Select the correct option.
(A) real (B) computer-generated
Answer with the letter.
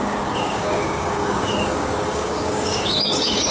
B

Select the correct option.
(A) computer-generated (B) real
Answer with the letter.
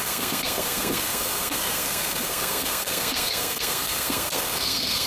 A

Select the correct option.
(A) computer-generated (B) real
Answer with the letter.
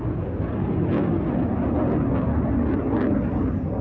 B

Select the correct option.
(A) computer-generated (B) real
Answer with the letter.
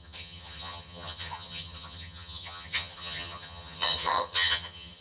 A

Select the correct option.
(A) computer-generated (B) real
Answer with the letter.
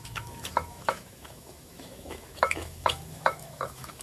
A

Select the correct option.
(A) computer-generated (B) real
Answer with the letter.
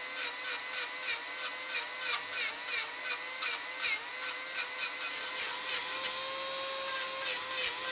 B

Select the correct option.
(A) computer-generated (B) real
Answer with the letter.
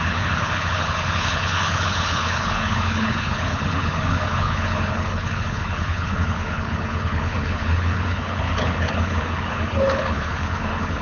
A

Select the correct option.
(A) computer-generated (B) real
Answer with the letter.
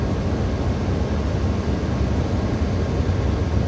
B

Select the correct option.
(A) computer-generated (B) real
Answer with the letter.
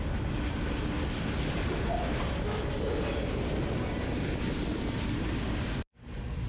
B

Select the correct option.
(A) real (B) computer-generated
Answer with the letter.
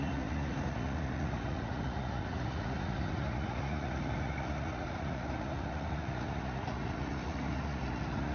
B